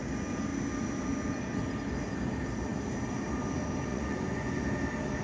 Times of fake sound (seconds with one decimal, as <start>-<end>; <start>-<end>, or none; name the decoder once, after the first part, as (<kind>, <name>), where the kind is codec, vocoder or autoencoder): 3.9-4.6 (vocoder, Vocos)